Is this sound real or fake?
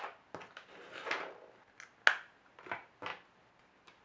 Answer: real